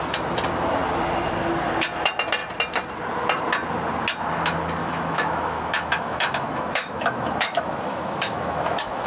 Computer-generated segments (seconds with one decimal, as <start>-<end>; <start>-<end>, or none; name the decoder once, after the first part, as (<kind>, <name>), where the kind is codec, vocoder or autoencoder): 4.8-9.1 (autoencoder, DAC-VAE)

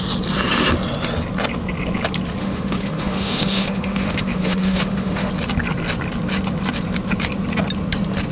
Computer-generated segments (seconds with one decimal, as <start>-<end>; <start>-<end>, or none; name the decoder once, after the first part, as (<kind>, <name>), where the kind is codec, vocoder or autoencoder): 2.4-5.3 (autoencoder, DAC-VAE)

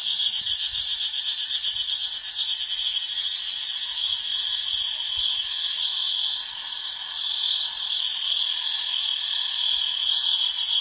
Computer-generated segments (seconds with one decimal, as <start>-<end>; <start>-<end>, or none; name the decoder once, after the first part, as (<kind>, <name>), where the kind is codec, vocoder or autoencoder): none

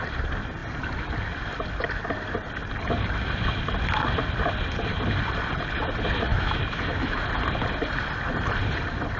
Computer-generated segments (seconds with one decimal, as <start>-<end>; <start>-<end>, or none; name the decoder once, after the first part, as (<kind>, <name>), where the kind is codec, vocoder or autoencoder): 6.3-7.2 (autoencoder, DAC-VAE)

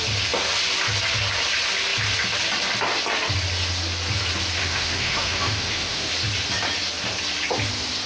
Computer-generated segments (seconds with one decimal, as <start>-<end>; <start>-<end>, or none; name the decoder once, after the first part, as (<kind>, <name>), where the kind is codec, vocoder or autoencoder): 4.6-6.1 (autoencoder, DAC-VAE)

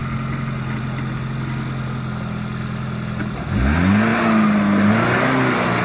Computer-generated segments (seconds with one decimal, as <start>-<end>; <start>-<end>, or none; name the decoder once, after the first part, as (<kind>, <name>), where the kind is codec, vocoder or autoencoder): none